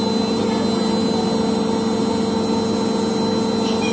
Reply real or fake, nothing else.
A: real